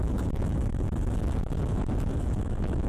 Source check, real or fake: fake